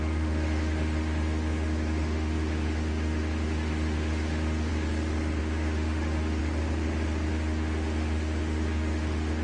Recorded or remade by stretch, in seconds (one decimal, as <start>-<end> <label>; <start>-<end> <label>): 0.0-4.7 remade; 4.7-5.4 recorded; 5.4-6.4 remade; 6.4-7.3 recorded; 7.3-9.4 remade